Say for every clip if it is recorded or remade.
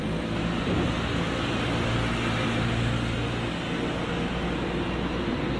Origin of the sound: recorded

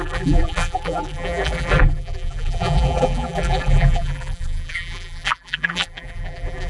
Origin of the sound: remade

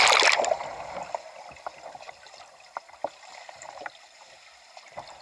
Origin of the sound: recorded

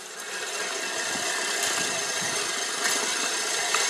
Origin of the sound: recorded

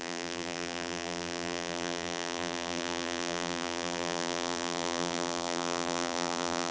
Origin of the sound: remade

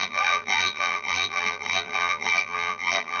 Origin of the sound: remade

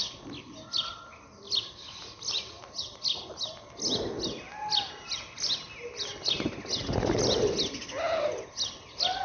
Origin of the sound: recorded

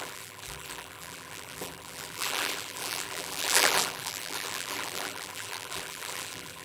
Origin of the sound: remade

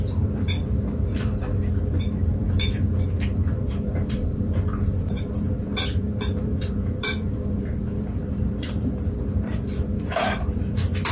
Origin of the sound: remade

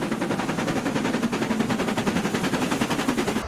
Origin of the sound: recorded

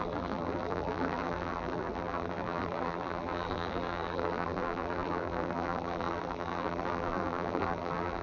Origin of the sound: remade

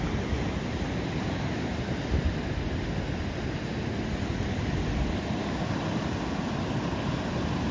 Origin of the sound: recorded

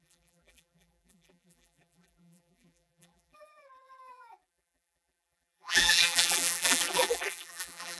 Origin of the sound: remade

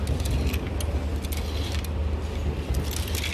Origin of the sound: recorded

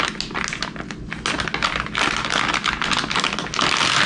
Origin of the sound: recorded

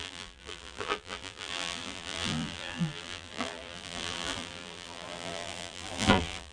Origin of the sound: remade